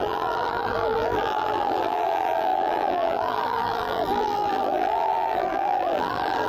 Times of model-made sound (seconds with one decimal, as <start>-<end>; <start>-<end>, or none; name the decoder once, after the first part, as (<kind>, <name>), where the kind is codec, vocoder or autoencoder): 0.0-6.5 (vocoder, BigVGAN v2)